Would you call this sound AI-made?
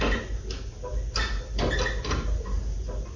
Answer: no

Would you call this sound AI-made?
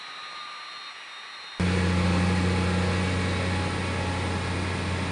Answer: no